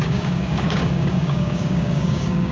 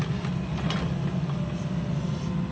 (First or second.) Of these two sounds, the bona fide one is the second